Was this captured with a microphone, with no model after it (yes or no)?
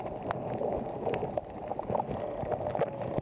yes